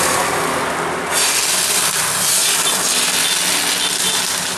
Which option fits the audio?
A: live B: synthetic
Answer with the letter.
A